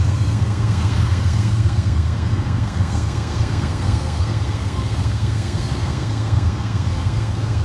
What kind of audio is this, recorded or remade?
remade